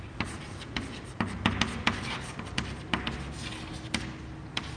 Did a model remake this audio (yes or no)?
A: no